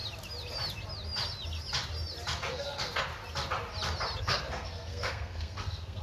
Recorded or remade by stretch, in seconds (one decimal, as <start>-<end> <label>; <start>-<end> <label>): 0.0-2.5 recorded; 2.5-3.1 remade; 3.1-4.2 recorded; 4.2-6.0 remade